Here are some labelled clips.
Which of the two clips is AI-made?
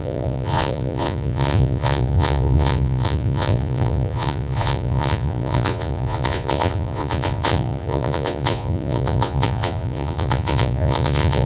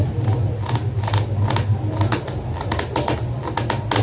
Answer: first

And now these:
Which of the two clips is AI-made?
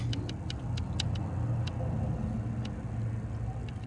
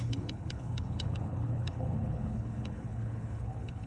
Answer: second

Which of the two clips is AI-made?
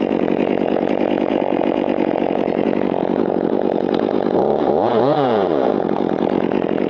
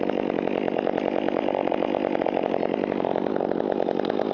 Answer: first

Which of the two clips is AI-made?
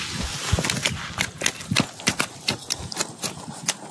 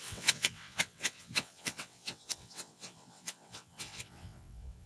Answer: second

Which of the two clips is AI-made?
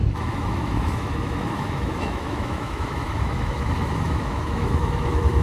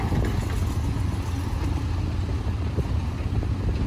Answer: first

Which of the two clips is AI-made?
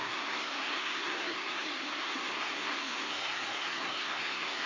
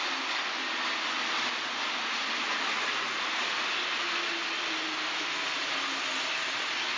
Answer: first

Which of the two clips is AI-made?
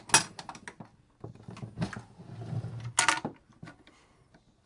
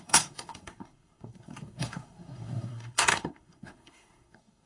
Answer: second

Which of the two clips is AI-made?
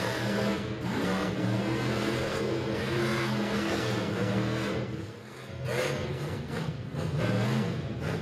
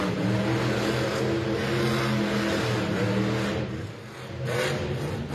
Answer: first